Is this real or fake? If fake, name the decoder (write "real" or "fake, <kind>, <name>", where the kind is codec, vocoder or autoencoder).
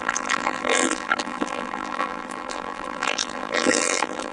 fake, vocoder, BigVGAN v2